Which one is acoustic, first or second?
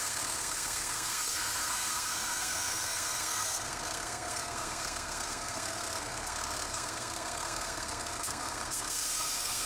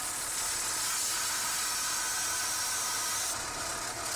second